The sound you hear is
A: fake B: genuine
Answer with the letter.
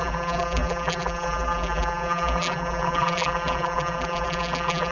A